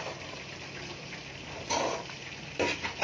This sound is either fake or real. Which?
real